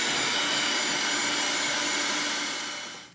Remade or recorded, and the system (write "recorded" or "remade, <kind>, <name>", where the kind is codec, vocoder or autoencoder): recorded